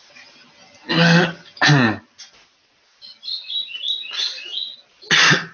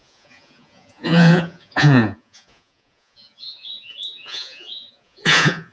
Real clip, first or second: first